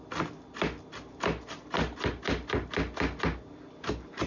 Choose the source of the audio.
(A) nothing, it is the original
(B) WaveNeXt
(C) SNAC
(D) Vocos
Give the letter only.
A